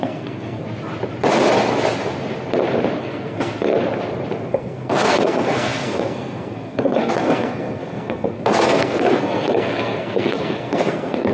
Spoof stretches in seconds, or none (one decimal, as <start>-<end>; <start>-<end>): 0.0-0.6; 3.0-3.7; 4.5-11.3